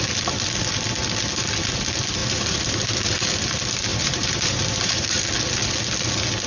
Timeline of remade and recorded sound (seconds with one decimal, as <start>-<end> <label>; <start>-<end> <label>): 0.0-2.2 recorded; 2.2-3.2 remade; 3.2-3.9 recorded; 3.9-5.2 remade; 5.2-6.5 recorded